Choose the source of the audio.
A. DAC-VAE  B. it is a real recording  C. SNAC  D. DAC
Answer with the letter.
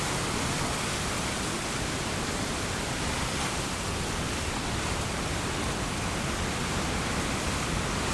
B